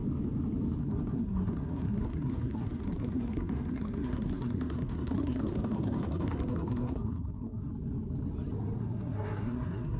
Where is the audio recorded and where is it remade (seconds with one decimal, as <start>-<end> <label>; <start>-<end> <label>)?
0.0-0.8 recorded; 0.8-7.7 remade; 7.7-8.8 recorded; 8.8-10.0 remade